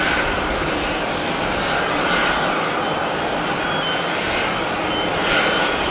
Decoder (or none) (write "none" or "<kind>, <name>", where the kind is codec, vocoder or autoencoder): none